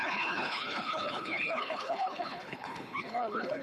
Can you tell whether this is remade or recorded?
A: remade